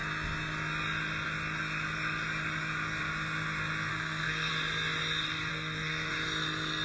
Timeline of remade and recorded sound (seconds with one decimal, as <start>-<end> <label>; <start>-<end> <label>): 0.0-3.9 recorded; 3.9-4.5 remade; 4.5-5.5 recorded; 5.5-6.1 remade; 6.1-6.8 recorded